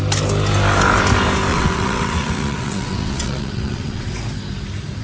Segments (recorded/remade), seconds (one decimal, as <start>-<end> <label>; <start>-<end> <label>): 0.0-1.5 recorded; 1.5-4.1 remade; 4.1-5.0 recorded